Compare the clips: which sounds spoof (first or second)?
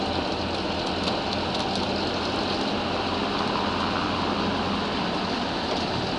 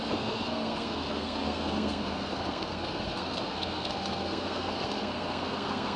second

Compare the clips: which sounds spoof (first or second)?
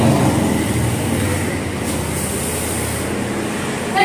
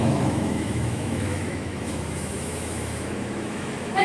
second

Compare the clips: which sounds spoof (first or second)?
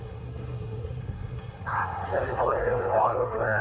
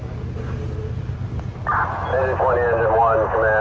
first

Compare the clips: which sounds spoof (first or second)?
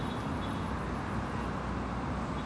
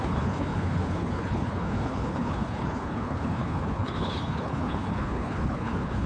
second